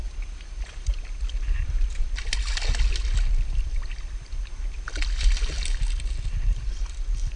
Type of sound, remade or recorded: recorded